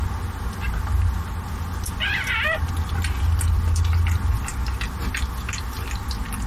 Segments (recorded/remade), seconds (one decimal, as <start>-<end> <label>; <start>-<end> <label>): 0.0-6.5 recorded